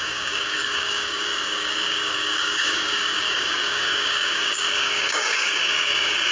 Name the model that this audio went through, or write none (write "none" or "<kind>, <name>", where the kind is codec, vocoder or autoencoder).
codec, DAC